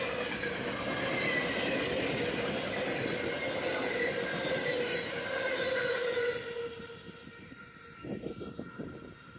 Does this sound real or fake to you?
real